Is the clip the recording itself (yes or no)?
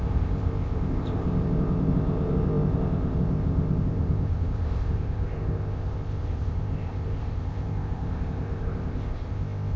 no